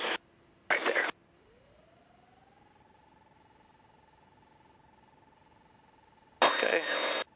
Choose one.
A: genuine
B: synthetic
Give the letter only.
A